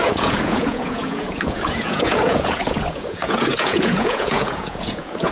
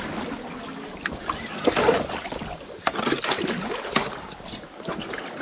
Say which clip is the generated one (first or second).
first